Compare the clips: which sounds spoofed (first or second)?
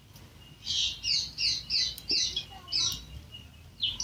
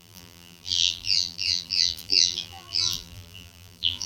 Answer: second